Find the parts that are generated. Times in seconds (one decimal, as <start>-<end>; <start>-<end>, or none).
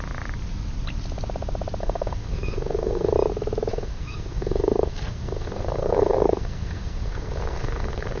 1.8-3.1; 3.7-8.2